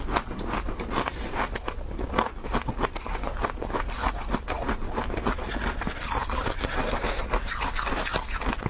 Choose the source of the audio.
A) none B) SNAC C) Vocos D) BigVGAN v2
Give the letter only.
A